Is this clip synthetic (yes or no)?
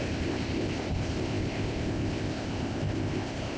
yes